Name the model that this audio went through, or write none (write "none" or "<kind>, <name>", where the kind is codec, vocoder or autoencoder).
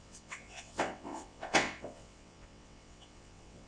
vocoder, WaveNeXt